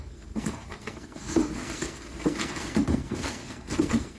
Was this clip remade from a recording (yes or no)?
yes